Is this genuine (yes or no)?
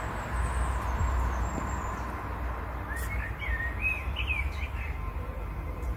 yes